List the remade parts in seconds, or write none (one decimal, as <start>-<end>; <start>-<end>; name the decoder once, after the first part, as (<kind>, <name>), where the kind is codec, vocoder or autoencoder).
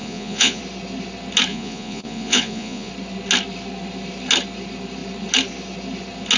0.0-0.6 (vocoder, Vocos); 1.5-2.9